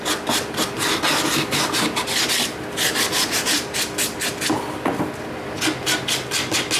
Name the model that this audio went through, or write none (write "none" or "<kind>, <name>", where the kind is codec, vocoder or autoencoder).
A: none